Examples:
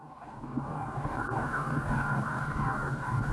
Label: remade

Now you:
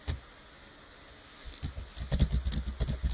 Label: recorded